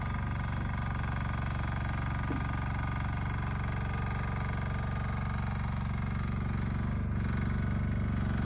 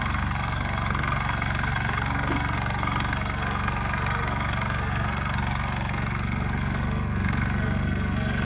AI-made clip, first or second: second